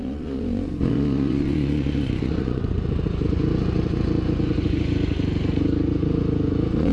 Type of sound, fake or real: fake